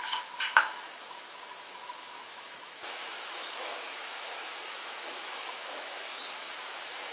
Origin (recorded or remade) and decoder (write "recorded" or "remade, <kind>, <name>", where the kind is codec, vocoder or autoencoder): remade, autoencoder, DAC-VAE